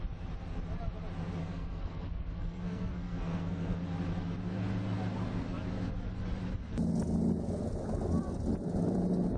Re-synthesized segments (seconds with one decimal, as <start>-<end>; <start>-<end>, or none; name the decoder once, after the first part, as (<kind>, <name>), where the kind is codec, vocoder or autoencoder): 1.4-3.8 (codec, SNAC)